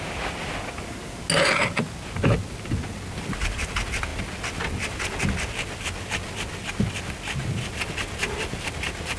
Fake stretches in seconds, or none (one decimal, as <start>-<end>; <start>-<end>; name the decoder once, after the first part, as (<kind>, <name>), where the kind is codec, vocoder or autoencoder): none